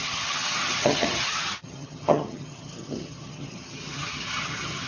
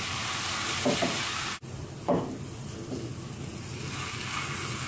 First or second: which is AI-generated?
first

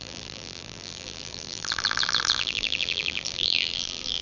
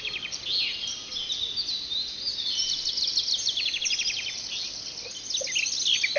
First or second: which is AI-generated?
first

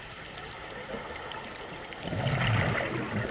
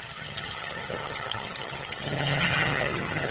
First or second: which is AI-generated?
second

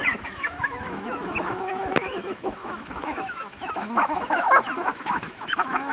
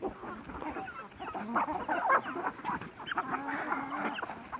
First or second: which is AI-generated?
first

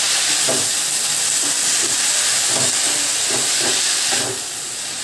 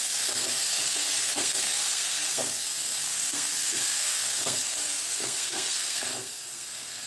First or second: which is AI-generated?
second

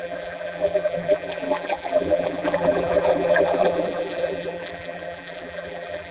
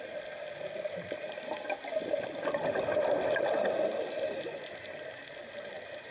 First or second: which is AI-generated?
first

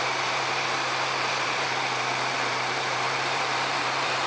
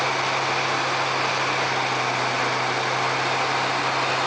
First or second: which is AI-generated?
first